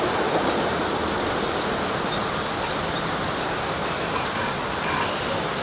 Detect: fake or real real